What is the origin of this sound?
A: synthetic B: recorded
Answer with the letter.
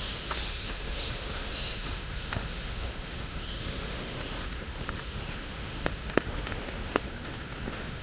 A